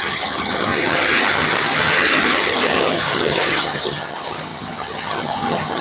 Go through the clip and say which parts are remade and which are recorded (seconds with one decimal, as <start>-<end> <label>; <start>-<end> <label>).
0.0-5.8 remade